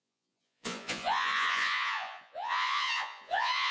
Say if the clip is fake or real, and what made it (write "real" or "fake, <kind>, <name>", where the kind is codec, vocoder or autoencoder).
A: fake, vocoder, Vocos